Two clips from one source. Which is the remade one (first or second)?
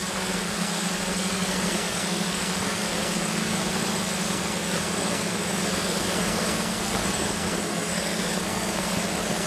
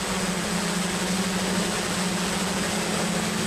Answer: first